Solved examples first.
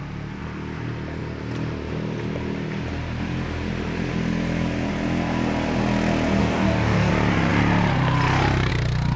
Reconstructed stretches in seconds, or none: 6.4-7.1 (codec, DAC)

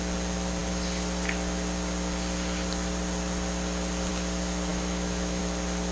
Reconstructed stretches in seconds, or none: 4.7-5.4 (autoencoder, DAC-VAE)

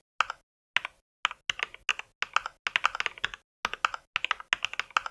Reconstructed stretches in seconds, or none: none